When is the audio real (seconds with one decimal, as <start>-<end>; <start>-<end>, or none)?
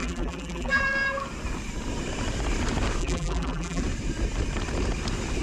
0.8-3.0; 3.8-5.4